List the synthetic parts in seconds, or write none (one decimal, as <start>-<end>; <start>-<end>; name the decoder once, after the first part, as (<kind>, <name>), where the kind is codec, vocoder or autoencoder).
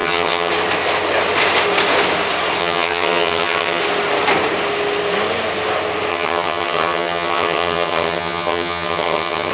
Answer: 0.0-0.5 (vocoder, HiFi-GAN); 2.6-3.8; 6.1-9.5